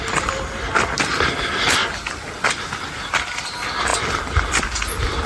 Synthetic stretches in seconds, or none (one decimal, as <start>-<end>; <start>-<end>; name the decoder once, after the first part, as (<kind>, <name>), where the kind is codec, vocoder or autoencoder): none